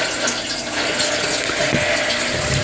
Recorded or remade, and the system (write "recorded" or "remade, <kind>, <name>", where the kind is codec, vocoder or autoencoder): recorded